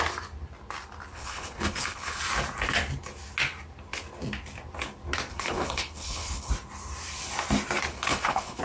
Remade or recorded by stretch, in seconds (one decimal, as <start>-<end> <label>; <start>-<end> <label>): 0.0-1.1 recorded; 1.1-2.2 remade; 2.2-5.3 recorded; 5.3-6.5 remade; 6.5-7.9 recorded; 7.9-8.6 remade